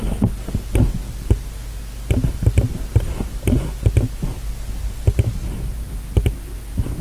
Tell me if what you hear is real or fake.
real